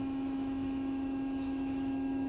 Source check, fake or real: fake